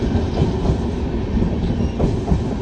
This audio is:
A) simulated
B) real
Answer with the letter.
B